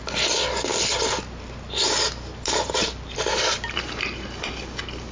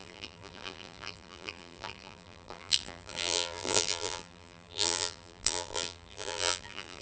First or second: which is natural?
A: first